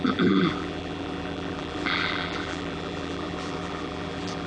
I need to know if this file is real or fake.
fake